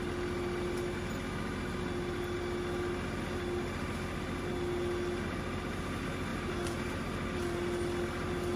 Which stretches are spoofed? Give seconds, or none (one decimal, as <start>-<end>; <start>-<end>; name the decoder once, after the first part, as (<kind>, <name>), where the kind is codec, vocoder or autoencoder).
none